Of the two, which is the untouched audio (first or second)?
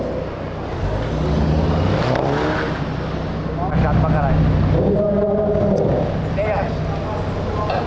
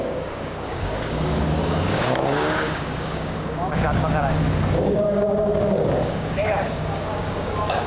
first